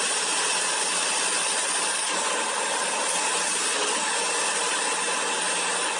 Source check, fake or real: real